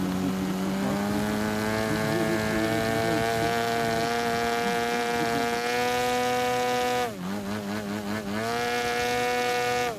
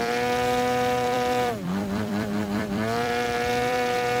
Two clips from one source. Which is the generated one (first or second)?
second